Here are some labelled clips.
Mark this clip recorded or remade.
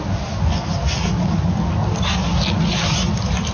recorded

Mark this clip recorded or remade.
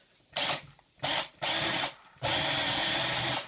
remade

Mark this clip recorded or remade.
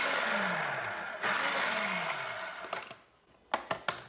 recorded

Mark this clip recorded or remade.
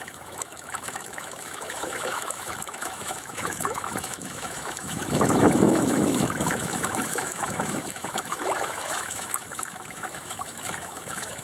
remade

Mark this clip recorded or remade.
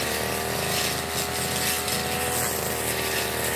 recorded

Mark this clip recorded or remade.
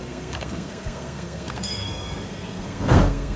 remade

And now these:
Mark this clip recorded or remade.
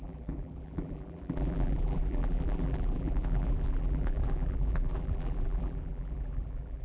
remade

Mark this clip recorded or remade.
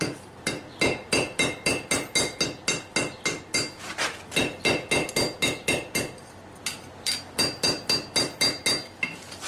recorded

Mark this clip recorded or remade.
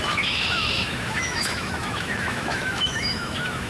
remade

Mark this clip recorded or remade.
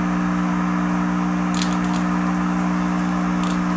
recorded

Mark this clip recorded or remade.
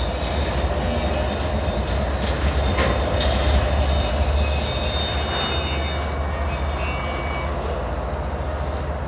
recorded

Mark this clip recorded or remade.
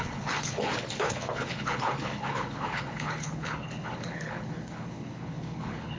remade